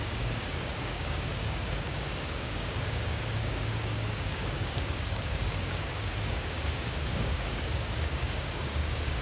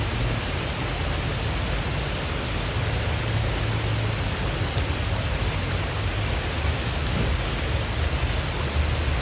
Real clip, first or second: second